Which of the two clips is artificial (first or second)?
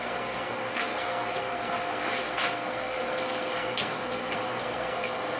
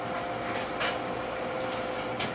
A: first